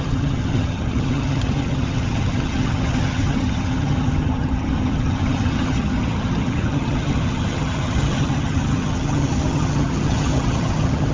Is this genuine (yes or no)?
no